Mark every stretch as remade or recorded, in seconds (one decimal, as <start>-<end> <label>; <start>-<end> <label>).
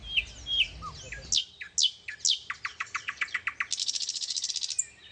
0.0-2.7 recorded; 2.7-3.4 remade; 3.4-3.8 recorded; 3.8-4.5 remade; 4.5-5.1 recorded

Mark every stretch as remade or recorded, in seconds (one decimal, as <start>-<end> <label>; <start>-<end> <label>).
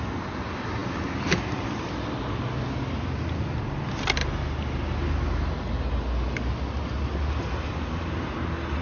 0.0-8.8 recorded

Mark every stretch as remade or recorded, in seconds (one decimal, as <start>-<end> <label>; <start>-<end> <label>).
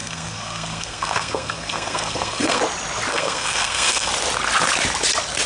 0.0-2.6 remade; 2.6-3.1 recorded; 3.1-4.1 remade; 4.1-5.5 recorded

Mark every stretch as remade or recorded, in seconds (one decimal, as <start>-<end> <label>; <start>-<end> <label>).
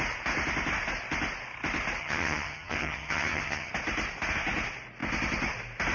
0.0-2.0 recorded; 2.0-3.7 remade; 3.7-5.9 recorded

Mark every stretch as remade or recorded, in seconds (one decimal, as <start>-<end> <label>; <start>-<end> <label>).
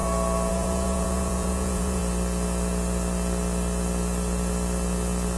0.0-0.5 recorded; 0.5-2.0 remade; 2.0-5.4 recorded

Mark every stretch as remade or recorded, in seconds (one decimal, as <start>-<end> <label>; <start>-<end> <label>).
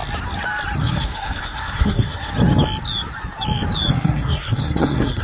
0.0-0.8 recorded; 0.8-2.3 remade; 2.3-3.9 recorded; 3.9-5.2 remade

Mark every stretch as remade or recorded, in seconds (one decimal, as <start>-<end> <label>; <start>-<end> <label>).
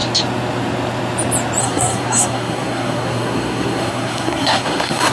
0.0-1.6 recorded; 1.6-5.1 remade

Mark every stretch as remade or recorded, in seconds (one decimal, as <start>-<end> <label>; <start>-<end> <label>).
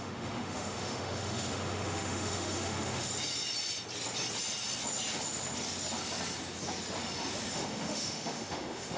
0.0-3.1 remade; 3.1-7.5 recorded; 7.5-9.0 remade